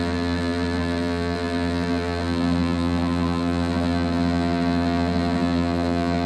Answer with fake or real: fake